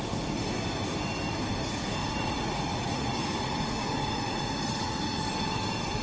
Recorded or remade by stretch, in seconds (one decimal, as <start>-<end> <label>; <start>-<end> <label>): 0.0-2.0 recorded; 2.0-5.2 remade; 5.2-6.0 recorded